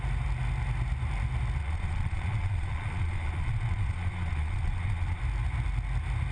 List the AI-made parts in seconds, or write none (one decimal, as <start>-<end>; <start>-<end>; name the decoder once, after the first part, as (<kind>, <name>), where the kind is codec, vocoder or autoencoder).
1.6-5.2 (vocoder, Vocos)

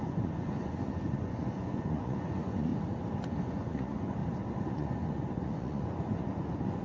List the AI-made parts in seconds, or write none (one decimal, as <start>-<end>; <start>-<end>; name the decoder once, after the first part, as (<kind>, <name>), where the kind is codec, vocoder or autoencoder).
0.0-2.7 (vocoder, Vocos); 3.4-4.2; 4.7-6.8

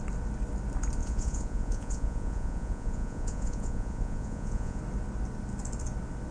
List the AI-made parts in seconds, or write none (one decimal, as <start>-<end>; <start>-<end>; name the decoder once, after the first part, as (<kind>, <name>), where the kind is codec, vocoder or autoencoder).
1.0-4.8 (vocoder, Vocos)

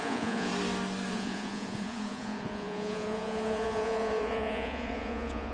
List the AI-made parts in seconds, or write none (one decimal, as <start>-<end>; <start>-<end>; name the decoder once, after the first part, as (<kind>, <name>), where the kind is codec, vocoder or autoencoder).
0.0-0.5 (vocoder, Vocos); 1.1-5.5

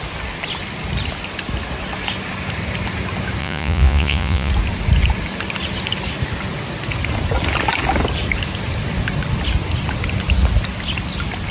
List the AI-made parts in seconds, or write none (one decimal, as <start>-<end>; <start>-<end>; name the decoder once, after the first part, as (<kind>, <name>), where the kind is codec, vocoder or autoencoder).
3.4-4.5 (vocoder, Vocos)